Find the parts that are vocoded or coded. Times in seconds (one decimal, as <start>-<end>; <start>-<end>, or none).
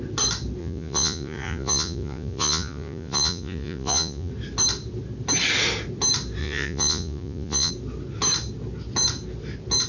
0.6-4.3; 6.4-7.7